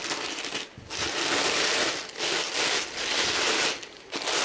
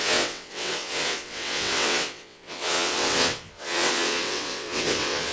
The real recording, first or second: first